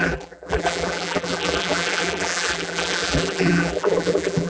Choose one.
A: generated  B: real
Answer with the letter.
A